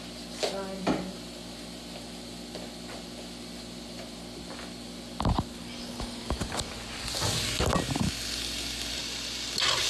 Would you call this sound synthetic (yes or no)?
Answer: no